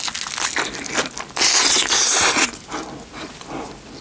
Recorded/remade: recorded